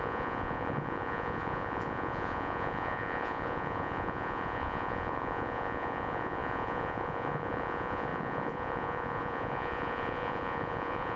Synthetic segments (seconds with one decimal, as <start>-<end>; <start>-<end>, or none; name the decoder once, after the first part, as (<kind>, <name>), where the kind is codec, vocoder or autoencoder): 0.0-11.2 (vocoder, Vocos)